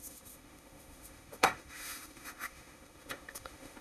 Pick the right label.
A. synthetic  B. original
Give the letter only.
A